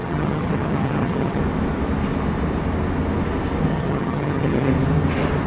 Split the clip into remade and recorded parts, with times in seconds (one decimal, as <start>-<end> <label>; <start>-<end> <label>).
0.0-1.4 remade; 1.4-3.7 recorded; 3.7-4.7 remade; 4.7-5.5 recorded